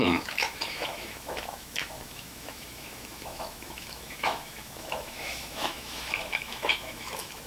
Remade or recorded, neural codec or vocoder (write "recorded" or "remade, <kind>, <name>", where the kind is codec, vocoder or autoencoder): remade, autoencoder, DAC-VAE